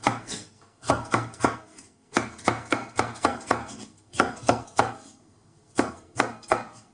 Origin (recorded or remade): remade